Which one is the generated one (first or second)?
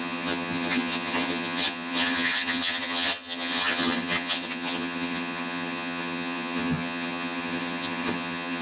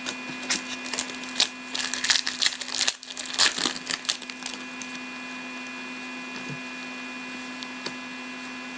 first